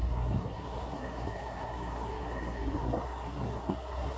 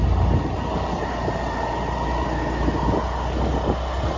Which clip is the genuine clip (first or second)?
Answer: second